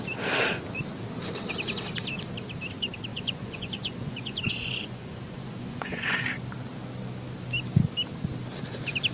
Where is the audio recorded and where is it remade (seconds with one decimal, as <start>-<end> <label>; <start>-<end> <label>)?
0.0-3.1 recorded; 3.1-6.2 remade; 6.2-9.1 recorded